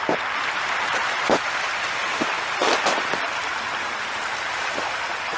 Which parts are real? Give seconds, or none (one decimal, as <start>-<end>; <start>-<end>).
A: 0.0-5.4